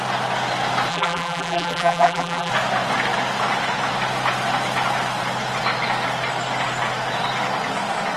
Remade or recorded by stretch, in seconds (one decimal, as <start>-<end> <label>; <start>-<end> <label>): 0.0-0.9 recorded; 0.9-2.5 remade; 2.5-8.2 recorded